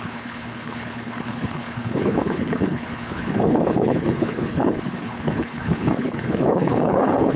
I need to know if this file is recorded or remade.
remade